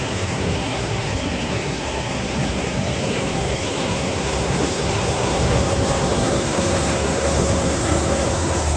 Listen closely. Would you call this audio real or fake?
fake